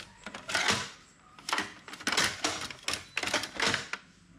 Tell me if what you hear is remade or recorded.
recorded